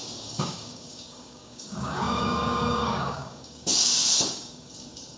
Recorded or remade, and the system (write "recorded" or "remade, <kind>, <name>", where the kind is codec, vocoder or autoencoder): remade, codec, DAC